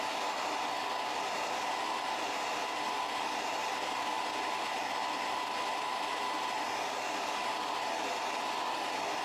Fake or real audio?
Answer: real